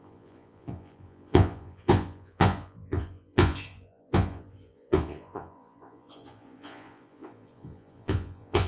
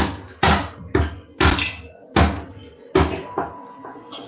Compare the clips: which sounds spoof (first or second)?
first